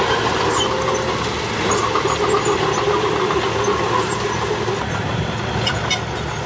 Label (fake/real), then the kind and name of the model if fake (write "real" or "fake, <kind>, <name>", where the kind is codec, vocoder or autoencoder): real